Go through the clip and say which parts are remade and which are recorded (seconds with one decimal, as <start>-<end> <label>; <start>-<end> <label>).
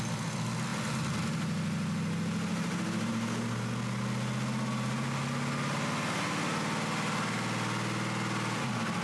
0.0-2.5 recorded; 2.5-3.1 remade; 3.1-9.0 recorded